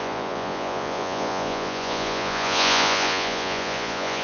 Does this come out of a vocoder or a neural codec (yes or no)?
yes